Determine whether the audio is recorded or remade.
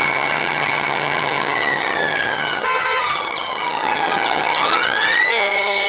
remade